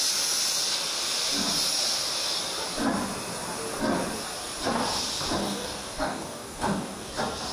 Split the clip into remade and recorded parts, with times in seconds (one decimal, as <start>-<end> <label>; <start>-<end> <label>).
0.0-5.4 recorded; 5.4-7.1 remade; 7.1-7.5 recorded